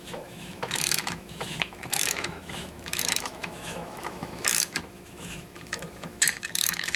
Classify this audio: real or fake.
fake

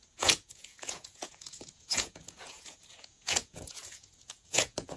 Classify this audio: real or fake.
fake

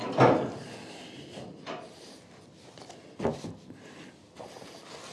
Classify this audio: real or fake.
real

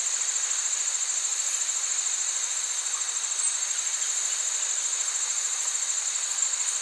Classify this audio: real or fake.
real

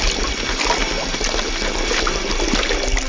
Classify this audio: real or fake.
real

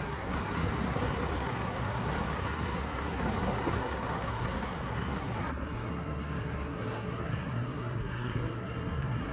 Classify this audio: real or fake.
fake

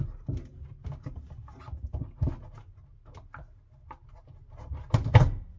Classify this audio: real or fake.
real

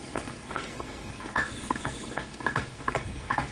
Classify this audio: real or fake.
fake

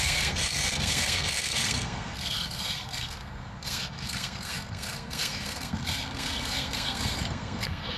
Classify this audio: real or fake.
fake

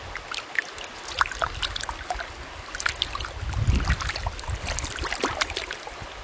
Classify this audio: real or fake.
real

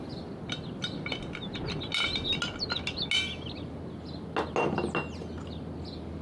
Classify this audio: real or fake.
real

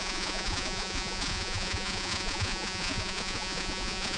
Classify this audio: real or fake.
fake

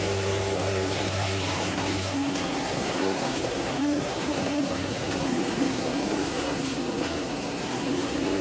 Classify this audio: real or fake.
fake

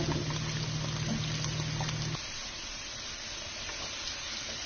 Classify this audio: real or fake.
real